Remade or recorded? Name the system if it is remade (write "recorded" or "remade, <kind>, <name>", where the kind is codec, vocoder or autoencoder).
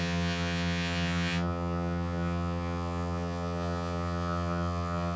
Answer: remade, vocoder, HiFi-GAN